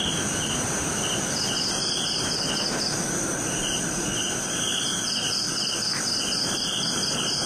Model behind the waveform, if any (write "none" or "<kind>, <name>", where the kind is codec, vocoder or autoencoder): none